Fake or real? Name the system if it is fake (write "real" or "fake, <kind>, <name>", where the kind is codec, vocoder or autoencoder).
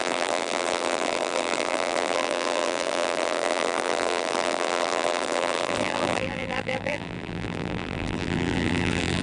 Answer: fake, vocoder, BigVGAN v2